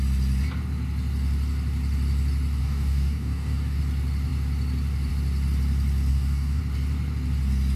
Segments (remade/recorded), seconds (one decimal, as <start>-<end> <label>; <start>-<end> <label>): 0.0-2.6 recorded; 2.6-3.8 remade; 3.8-6.1 recorded; 6.1-6.6 remade; 6.6-7.8 recorded